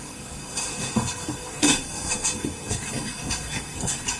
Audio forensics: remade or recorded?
remade